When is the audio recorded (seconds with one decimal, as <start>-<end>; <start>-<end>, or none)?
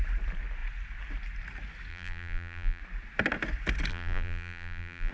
0.0-1.9; 2.8-3.9